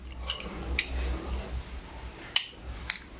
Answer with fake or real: real